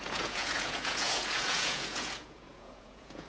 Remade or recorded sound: remade